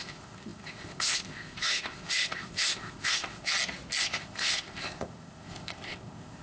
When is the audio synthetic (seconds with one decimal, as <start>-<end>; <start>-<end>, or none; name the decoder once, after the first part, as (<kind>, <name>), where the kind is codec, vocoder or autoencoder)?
0.0-3.5 (codec, ZipCodec); 4.0-6.4